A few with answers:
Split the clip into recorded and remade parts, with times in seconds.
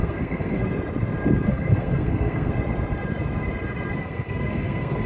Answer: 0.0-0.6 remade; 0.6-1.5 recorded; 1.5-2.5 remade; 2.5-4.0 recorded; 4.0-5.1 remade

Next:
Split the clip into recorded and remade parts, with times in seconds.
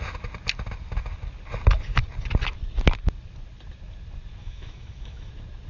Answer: 0.0-4.4 recorded; 4.4-5.3 remade; 5.3-5.7 recorded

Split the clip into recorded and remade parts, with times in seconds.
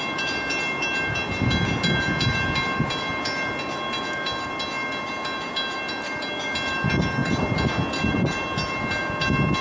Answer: 0.0-9.6 recorded